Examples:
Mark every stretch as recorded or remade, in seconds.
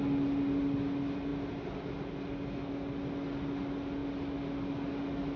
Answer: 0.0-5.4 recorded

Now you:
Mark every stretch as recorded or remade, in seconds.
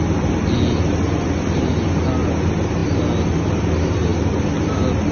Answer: 0.0-5.1 recorded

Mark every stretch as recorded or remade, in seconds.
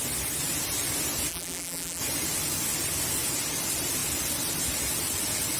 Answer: 0.0-1.3 recorded; 1.3-2.0 remade; 2.0-5.6 recorded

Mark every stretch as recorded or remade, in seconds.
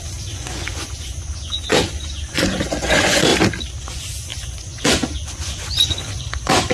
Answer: 0.0-3.3 remade; 3.3-3.8 recorded; 3.8-6.7 remade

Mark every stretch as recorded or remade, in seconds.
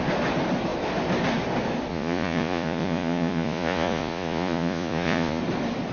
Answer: 0.0-1.9 recorded; 1.9-5.4 remade; 5.4-5.9 recorded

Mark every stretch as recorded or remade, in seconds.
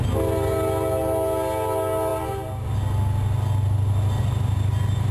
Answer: 0.0-5.1 recorded